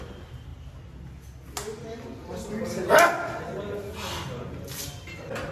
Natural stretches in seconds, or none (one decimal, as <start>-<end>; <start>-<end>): 0.0-5.5